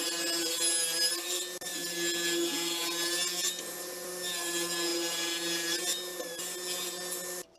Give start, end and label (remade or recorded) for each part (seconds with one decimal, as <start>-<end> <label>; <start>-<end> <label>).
0.0-7.6 recorded